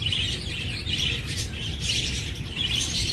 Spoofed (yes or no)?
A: yes